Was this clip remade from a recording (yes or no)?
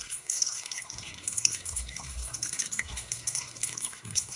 yes